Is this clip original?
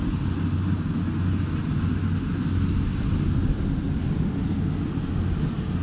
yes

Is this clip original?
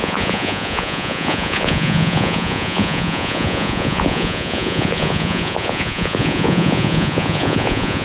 no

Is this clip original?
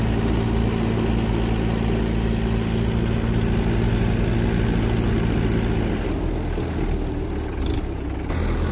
yes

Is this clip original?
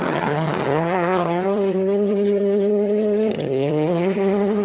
no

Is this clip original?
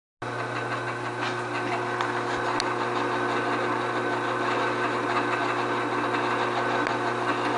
yes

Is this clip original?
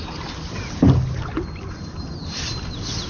yes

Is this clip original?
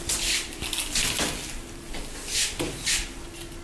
yes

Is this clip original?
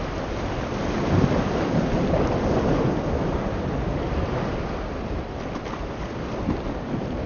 yes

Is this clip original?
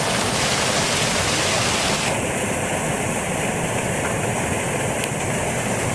yes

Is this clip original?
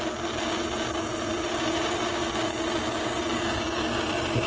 yes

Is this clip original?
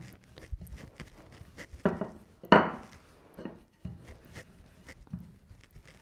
yes